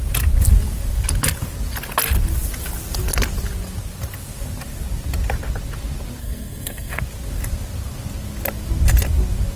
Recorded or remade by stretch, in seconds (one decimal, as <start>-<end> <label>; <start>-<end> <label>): 0.0-6.2 recorded; 6.2-7.0 remade; 7.0-9.6 recorded